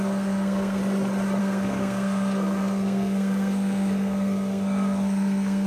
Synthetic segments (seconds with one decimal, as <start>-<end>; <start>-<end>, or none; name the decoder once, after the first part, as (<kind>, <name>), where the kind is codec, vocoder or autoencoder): 0.0-0.8 (codec, SNAC); 1.4-5.7